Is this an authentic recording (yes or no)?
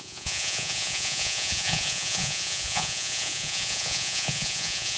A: no